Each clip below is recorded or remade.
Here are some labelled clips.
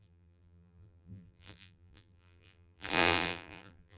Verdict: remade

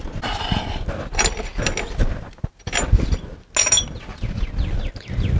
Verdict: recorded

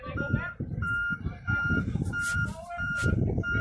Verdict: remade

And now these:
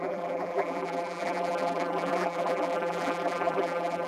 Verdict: remade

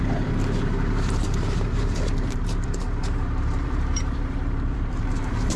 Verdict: remade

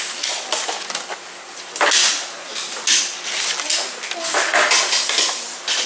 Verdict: recorded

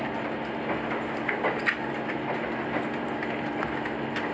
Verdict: recorded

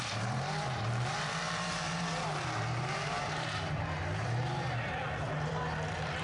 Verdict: remade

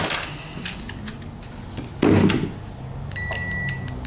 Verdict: recorded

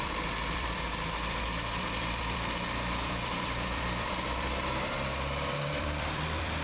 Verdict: remade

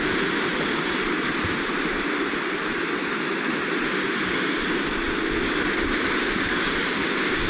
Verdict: remade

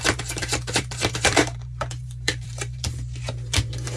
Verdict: remade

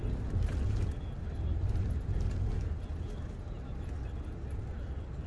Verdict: recorded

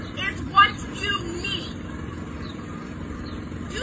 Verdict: remade